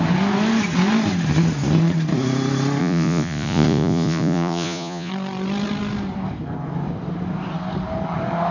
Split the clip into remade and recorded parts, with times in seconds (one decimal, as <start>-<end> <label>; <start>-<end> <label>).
0.0-2.8 recorded; 2.8-5.1 remade; 5.1-8.5 recorded